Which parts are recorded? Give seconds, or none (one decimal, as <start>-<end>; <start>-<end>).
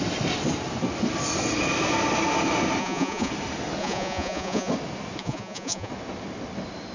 0.0-2.8; 3.3-3.8; 4.7-5.2; 5.9-6.9